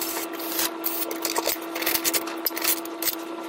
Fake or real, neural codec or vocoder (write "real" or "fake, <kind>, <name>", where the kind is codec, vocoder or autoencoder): real